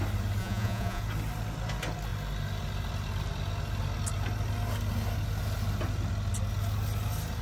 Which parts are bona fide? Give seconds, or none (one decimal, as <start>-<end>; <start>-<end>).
0.0-0.4; 1.0-7.4